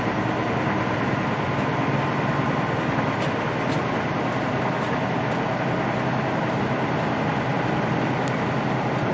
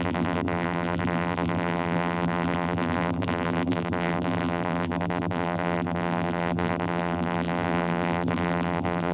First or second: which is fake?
second